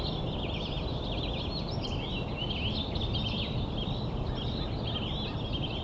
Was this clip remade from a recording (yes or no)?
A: no